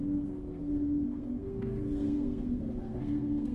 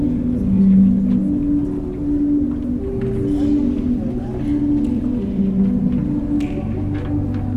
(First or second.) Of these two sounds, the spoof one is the first